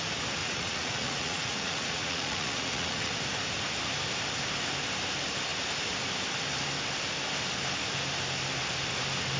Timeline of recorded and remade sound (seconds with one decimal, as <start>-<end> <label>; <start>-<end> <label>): 0.0-0.4 recorded; 0.4-3.1 remade; 3.1-9.4 recorded